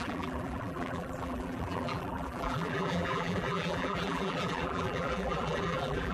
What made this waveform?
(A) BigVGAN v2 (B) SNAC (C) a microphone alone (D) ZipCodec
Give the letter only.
A